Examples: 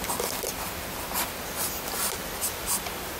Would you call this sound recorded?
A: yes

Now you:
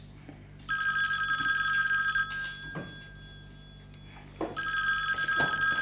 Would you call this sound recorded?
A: yes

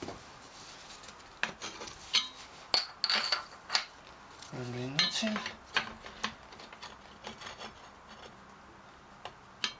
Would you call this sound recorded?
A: yes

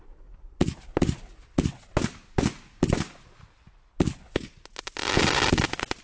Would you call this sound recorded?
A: yes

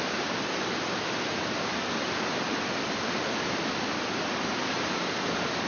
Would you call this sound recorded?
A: no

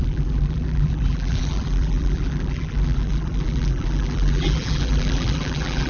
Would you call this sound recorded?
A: no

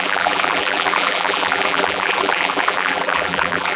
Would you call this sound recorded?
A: no